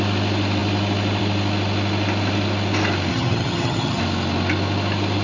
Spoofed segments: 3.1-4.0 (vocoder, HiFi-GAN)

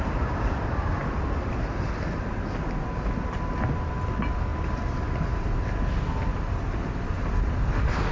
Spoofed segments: none

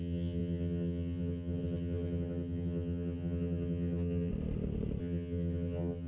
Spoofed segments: 0.0-4.3 (vocoder, HiFi-GAN); 5.0-6.1

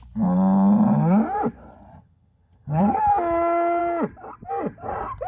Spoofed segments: 1.9-3.0 (vocoder, HiFi-GAN)

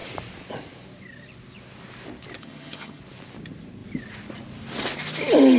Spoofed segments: 2.4-3.0 (vocoder, HiFi-GAN)

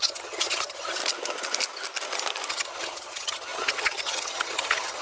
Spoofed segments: 0.0-1.0 (vocoder, HiFi-GAN); 2.5-5.0

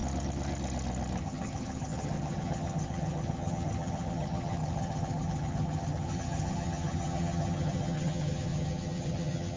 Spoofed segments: 1.2-9.6 (vocoder, HiFi-GAN)

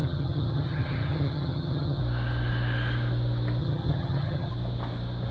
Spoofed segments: 0.0-2.0 (vocoder, HiFi-GAN); 3.6-4.5